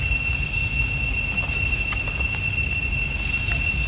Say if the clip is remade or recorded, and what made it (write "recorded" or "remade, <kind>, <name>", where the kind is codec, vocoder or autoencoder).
recorded